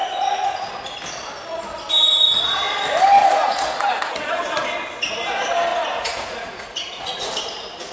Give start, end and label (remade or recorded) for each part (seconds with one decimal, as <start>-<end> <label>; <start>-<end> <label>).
0.0-0.7 remade; 0.7-3.2 recorded; 3.2-4.4 remade; 4.4-5.7 recorded; 5.7-7.3 remade; 7.3-7.9 recorded